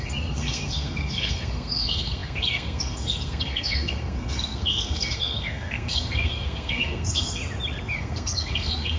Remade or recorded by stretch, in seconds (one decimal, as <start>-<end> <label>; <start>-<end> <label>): 0.0-7.4 remade; 7.4-8.0 recorded; 8.0-9.0 remade